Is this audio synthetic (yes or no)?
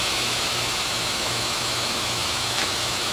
yes